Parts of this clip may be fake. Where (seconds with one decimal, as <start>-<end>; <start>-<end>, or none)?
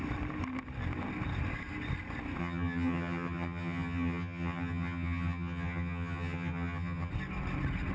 2.4-7.1